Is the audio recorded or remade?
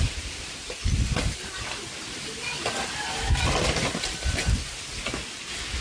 recorded